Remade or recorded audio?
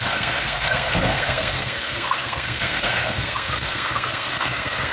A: remade